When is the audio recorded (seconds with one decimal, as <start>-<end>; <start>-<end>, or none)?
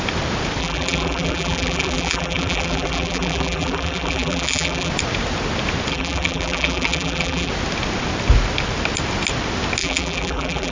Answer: 0.0-0.6; 4.9-5.9; 7.5-9.8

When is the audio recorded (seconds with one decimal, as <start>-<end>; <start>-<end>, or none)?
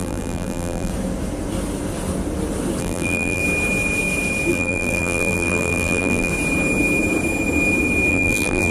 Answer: 0.9-2.8; 3.4-4.5; 6.3-8.1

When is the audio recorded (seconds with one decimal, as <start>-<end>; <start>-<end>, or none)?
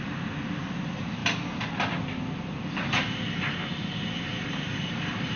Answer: 1.2-4.4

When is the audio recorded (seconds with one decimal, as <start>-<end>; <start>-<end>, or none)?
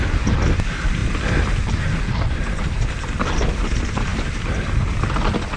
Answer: 0.0-4.1; 5.0-5.6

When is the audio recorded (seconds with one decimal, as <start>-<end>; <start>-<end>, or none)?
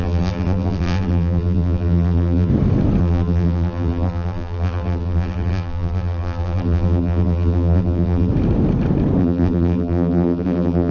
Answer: 2.5-3.0; 8.3-9.2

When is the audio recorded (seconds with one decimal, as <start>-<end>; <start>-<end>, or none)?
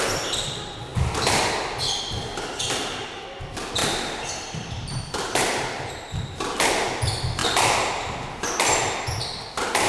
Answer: 0.0-3.8; 5.9-9.9